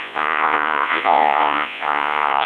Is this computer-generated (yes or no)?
yes